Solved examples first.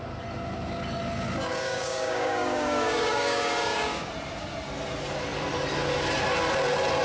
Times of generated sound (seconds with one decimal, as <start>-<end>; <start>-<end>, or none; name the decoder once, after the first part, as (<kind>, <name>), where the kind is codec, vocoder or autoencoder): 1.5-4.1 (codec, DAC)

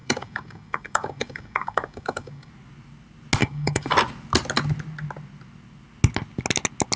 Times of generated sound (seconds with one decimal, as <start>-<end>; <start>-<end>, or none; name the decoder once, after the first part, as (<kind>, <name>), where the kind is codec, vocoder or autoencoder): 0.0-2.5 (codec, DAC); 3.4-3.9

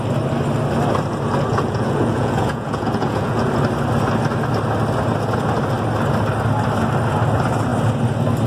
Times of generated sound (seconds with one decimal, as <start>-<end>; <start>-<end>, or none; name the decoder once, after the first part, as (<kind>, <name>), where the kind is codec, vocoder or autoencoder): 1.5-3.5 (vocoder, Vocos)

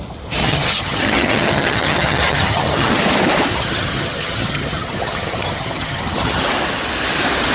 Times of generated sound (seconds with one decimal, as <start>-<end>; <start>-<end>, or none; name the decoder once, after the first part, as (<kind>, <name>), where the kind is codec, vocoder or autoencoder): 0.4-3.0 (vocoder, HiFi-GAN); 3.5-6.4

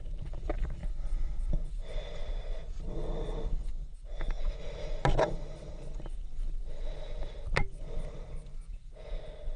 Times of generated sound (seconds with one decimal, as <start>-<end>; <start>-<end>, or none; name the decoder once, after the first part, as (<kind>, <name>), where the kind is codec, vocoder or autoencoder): 0.8-1.7 (vocoder, Vocos); 3.7-4.6; 8.5-9.2

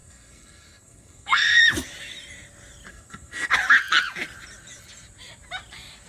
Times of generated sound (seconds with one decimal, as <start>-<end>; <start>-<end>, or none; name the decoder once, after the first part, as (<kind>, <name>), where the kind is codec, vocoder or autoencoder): 0.0-1.6 (codec, SNAC); 2.9-3.5